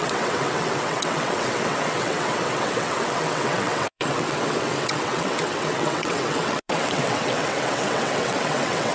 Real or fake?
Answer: fake